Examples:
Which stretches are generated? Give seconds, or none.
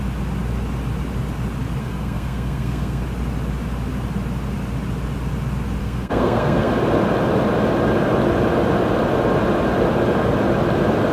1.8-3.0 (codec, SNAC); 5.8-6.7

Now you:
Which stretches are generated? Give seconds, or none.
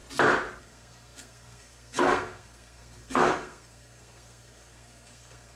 0.6-5.6 (codec, SNAC)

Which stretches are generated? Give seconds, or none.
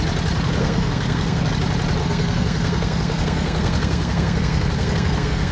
0.6-1.5 (codec, SNAC); 2.0-5.5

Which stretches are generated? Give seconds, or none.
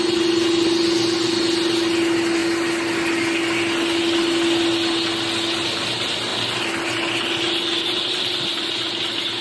none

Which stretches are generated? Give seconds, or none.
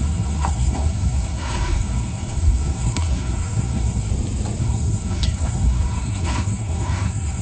0.0-4.1 (codec, SNAC); 4.6-7.4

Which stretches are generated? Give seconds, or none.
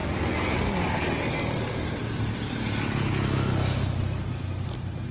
none